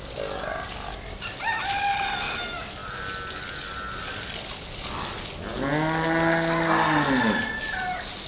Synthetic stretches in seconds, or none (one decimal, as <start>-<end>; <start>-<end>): none